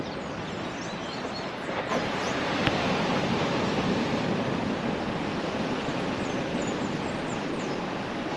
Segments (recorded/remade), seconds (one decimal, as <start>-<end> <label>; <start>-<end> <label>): 0.0-1.0 recorded; 1.0-4.1 remade; 4.1-6.5 recorded; 6.5-7.8 remade; 7.8-8.4 recorded